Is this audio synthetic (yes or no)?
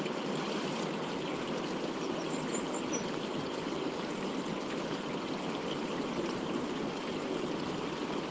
no